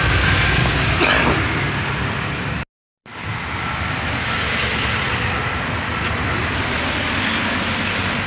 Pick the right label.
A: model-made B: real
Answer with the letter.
B